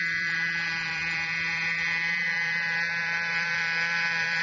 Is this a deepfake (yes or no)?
yes